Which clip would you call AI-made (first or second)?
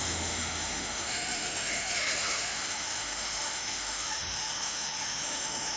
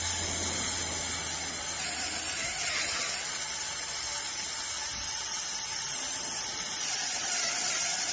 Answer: first